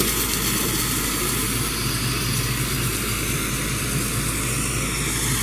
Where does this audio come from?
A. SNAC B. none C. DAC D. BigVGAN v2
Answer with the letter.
B